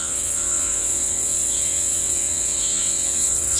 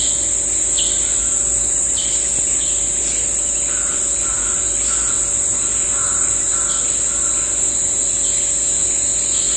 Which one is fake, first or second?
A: first